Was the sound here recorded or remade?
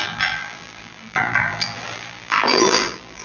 remade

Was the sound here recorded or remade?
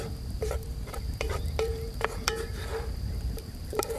remade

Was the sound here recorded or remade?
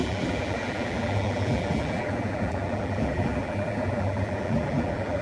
remade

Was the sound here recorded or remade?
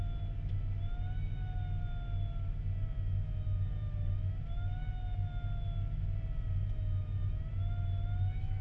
recorded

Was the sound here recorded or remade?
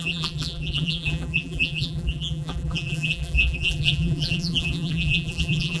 remade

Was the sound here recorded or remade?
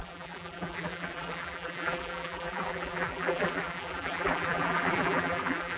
remade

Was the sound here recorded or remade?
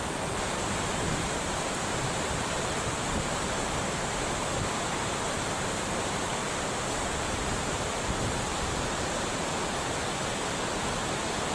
remade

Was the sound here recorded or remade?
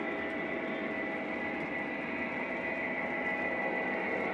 recorded